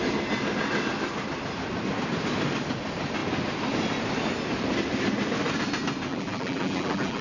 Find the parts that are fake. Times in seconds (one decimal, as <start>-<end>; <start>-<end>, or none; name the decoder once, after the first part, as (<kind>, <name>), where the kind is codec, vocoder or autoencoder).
6.1-7.2 (vocoder, BigVGAN v2)